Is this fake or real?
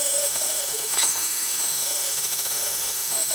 fake